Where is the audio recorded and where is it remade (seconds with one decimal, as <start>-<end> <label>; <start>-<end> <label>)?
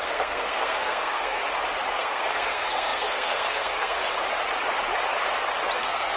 0.0-1.4 remade; 1.4-1.9 recorded; 1.9-4.0 remade; 4.0-5.8 recorded; 5.8-6.2 remade